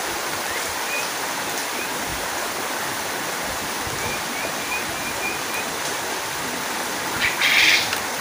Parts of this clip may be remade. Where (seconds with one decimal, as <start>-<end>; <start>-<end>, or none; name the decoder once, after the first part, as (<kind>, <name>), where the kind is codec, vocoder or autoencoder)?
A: 0.0-2.1 (vocoder, BigVGAN v2); 3.6-8.2